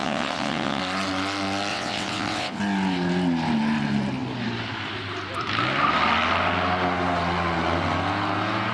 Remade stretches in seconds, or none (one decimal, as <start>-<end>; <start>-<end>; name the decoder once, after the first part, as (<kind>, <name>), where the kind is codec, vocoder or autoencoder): 0.0-0.8 (vocoder, WaveNeXt); 1.7-2.6